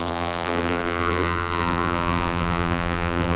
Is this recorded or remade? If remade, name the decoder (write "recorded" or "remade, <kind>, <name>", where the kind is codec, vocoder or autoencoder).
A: remade, vocoder, BigVGAN v2